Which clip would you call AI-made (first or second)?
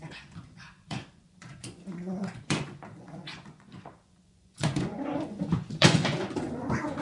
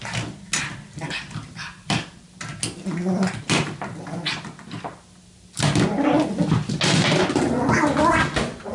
first